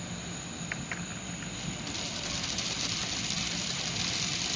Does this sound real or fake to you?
real